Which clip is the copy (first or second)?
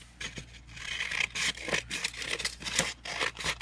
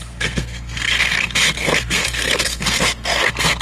second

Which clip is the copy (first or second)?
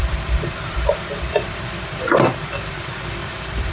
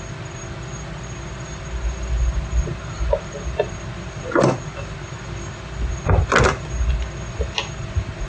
first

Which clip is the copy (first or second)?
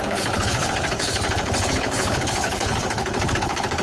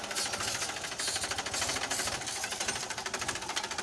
first